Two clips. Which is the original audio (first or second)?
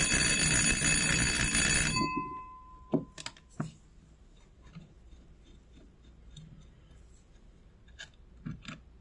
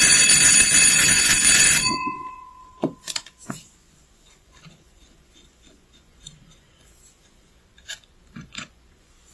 first